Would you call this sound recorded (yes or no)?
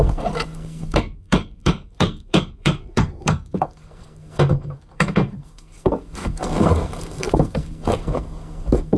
no